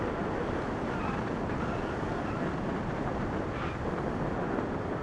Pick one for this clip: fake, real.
real